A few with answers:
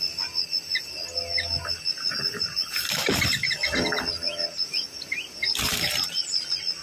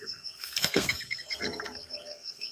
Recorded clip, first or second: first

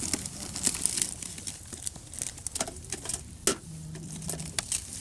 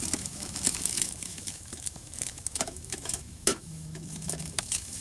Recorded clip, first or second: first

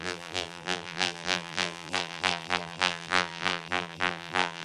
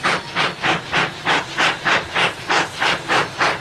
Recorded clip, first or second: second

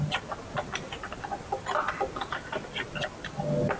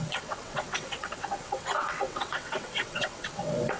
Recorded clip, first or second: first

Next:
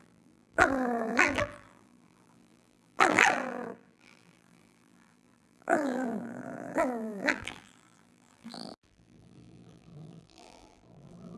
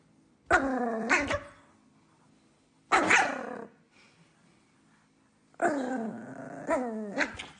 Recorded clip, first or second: second